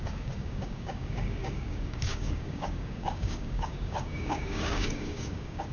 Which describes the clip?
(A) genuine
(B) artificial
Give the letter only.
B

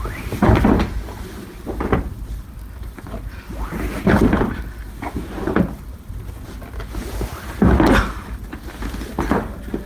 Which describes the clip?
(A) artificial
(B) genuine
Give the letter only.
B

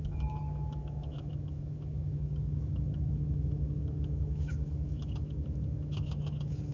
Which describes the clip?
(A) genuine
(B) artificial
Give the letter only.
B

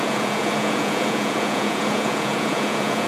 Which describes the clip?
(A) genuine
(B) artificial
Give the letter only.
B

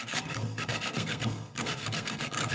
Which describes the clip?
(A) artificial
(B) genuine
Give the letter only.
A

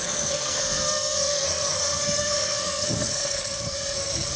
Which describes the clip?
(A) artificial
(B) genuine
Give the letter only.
A